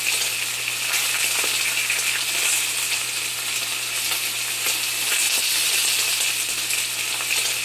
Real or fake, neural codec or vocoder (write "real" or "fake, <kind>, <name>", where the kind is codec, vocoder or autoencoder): real